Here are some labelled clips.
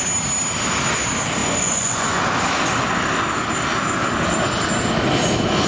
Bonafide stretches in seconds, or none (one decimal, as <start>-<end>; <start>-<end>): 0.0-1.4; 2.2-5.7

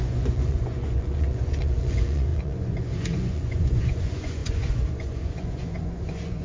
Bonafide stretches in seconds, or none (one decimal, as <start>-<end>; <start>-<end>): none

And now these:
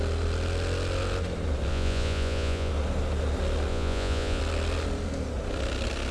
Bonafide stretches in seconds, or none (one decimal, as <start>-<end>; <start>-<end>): 0.0-1.7; 2.7-3.7; 4.4-6.1